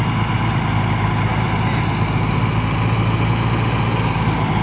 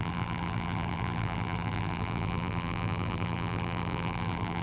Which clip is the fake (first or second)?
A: second